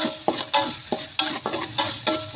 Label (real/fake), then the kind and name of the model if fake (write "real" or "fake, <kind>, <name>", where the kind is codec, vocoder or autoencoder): real